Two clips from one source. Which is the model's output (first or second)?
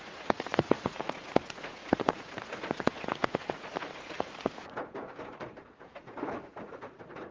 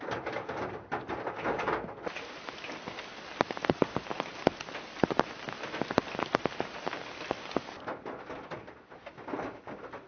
first